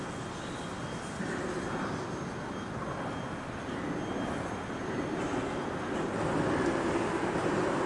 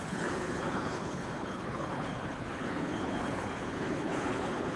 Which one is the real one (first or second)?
first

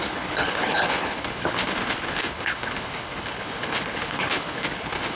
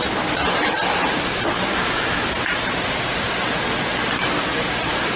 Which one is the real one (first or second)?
second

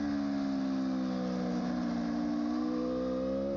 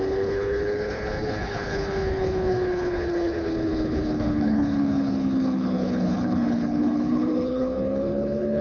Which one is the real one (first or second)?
first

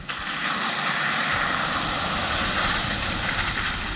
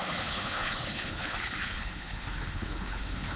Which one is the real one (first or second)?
first